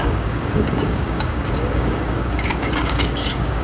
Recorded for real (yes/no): no